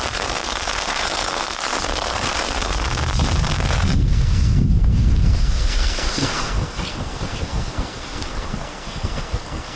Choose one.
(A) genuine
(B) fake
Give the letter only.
B